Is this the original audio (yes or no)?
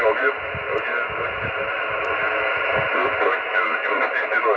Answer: yes